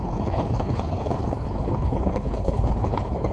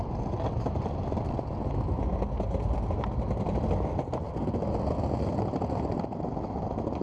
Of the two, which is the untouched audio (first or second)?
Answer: second